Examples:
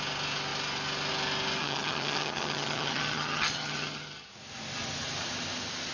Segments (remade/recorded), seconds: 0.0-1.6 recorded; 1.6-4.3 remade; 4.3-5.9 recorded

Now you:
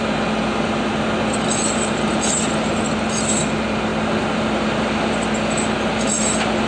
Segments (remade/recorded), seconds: 0.0-6.7 recorded